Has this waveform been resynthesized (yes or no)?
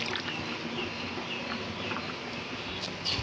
no